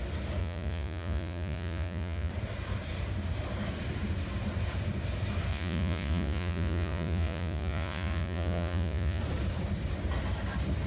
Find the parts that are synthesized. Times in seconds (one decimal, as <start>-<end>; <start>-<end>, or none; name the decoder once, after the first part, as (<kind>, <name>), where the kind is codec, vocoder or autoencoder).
0.4-2.3 (vocoder, Vocos); 5.5-9.2